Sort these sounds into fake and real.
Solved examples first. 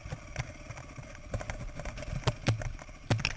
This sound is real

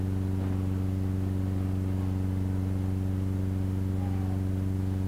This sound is real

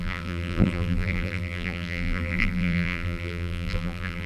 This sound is fake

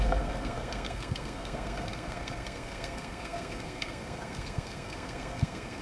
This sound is fake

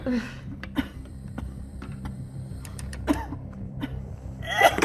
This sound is fake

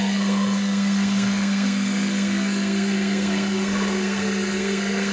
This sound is fake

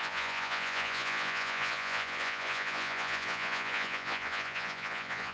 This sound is fake